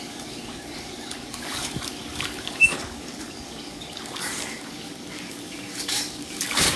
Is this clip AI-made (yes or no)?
yes